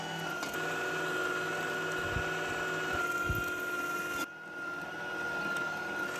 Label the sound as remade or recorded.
recorded